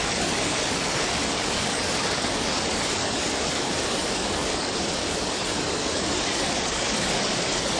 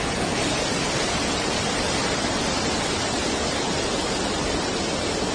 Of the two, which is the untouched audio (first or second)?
second